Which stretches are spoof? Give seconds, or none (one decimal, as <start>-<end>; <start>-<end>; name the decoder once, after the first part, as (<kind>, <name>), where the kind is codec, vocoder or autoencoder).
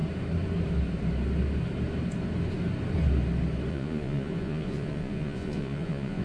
3.7-6.2 (vocoder, Vocos)